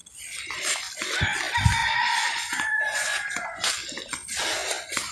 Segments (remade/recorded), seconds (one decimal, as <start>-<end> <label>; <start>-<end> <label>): 0.0-1.8 recorded; 1.8-3.7 remade; 3.7-5.1 recorded